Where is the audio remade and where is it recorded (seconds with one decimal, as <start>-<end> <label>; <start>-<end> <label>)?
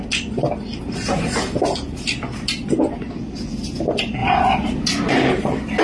0.0-5.8 recorded